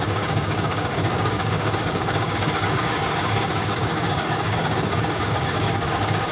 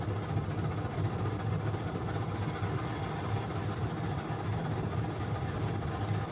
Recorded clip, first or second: second